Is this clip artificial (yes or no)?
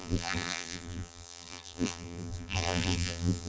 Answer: yes